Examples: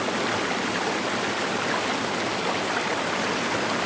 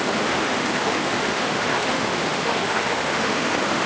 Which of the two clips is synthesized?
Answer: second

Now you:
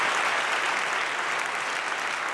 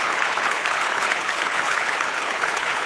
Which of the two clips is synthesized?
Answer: second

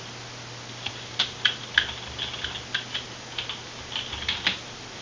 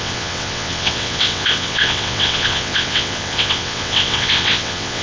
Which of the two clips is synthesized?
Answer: second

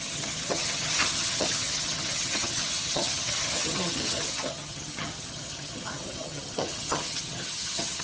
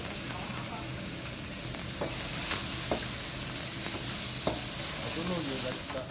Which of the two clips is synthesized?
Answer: first